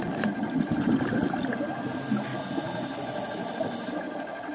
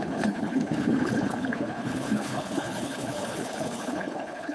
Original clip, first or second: first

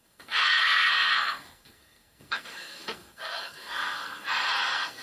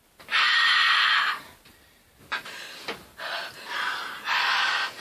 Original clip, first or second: second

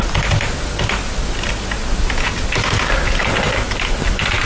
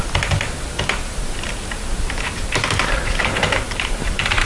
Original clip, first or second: first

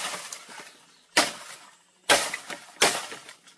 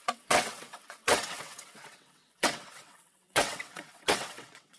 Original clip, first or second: first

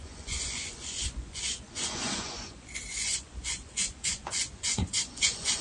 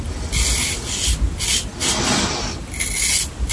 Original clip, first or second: second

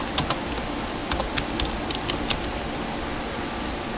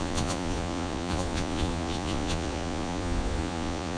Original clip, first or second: first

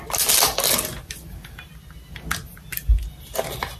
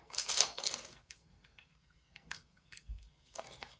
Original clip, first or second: first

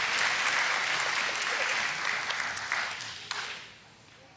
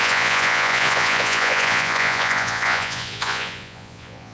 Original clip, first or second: first